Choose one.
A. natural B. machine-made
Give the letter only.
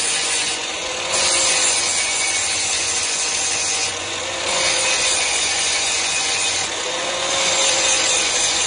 B